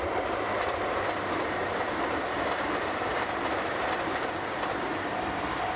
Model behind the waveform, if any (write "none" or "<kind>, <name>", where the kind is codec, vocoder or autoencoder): vocoder, BigVGAN v2